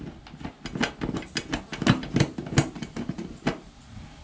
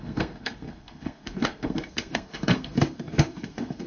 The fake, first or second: second